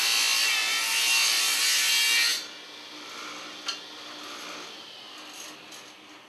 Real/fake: real